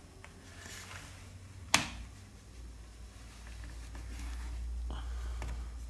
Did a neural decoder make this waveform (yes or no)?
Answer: no